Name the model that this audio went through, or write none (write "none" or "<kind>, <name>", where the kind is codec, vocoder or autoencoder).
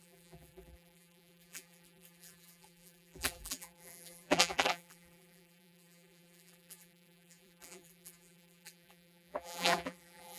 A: vocoder, BigVGAN v2